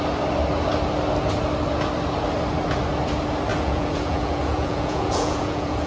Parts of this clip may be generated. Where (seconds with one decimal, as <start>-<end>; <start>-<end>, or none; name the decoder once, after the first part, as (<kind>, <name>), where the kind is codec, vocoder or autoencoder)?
3.5-5.9 (vocoder, Vocos)